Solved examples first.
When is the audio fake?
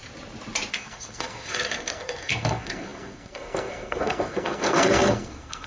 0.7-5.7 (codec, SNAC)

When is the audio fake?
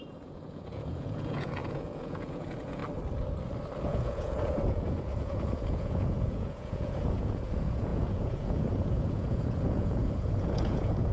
0.0-2.8 (vocoder, Vocos); 3.8-11.1